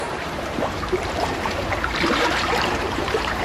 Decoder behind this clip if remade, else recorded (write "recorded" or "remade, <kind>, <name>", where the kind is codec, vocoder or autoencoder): remade, vocoder, BigVGAN v2